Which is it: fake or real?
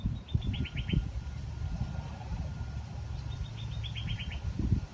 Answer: real